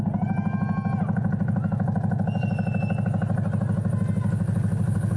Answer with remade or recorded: recorded